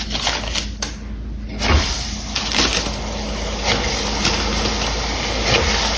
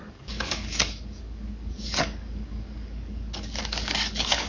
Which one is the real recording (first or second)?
first